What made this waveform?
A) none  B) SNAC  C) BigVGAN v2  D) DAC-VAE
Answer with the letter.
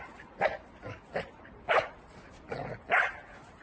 A